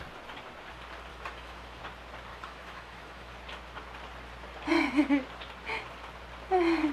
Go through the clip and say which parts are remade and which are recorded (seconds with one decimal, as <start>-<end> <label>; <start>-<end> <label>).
0.0-1.1 recorded; 1.1-1.8 remade; 1.8-2.3 recorded; 2.3-3.3 remade; 3.3-6.9 recorded